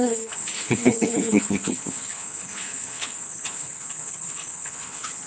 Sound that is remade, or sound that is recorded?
remade